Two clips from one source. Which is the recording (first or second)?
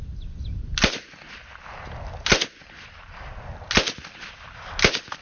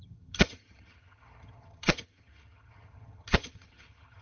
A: first